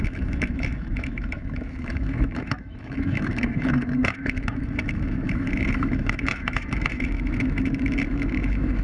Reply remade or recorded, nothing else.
remade